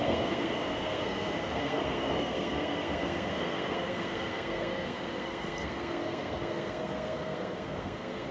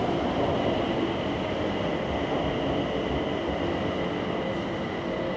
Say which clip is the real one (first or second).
second